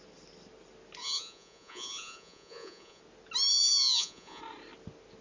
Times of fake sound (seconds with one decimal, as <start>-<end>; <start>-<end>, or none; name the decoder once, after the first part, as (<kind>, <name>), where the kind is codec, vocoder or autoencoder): 1.0-3.0 (vocoder, Vocos); 3.5-4.4